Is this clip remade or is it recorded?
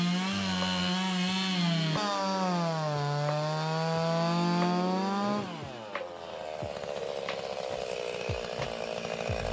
recorded